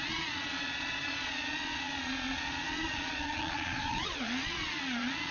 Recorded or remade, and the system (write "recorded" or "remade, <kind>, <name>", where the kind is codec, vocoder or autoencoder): remade, vocoder, Vocos